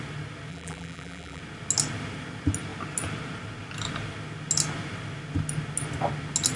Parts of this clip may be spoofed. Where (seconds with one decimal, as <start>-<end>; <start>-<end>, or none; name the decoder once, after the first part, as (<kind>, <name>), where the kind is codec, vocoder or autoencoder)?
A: 0.5-1.4 (vocoder, BigVGAN v2)